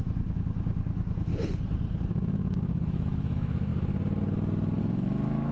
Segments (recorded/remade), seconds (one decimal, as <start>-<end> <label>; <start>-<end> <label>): 0.0-1.3 remade; 1.3-2.1 recorded; 2.1-3.7 remade; 3.7-4.8 recorded; 4.8-5.5 remade